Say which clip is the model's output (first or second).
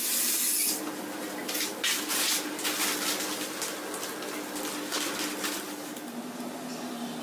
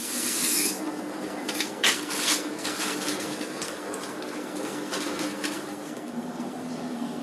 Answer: second